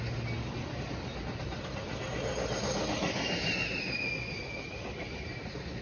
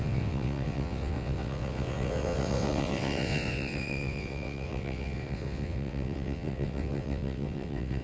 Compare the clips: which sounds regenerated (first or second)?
second